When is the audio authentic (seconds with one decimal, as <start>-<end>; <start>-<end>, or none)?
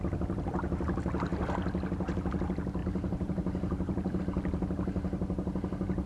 0.0-2.8; 4.2-6.1